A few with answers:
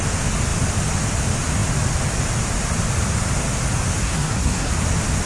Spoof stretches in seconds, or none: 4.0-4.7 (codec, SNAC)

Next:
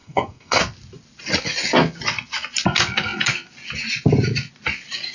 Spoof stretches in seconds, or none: 0.0-0.6 (codec, SNAC)

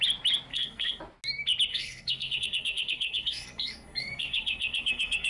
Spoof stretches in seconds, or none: 0.5-1.0 (codec, SNAC); 1.7-5.3